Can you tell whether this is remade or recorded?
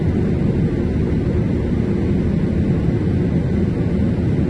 recorded